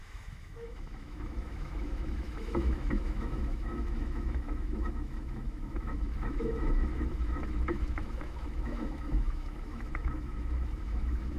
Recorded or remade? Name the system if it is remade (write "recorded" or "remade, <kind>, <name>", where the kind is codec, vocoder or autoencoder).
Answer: remade, autoencoder, DAC-VAE